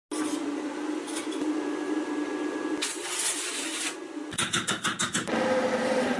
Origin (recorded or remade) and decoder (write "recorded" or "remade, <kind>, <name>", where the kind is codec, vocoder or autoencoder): recorded